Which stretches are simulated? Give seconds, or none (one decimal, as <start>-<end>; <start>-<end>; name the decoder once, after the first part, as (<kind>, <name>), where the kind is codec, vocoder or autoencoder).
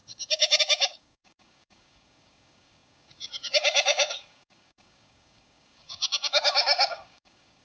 0.0-7.6 (codec, DAC)